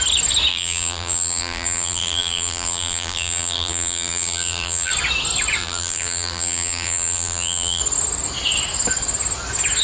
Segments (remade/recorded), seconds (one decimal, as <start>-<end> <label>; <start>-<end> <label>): 0.0-0.5 recorded; 0.5-4.9 remade; 4.9-5.6 recorded; 5.6-7.8 remade; 7.8-9.8 recorded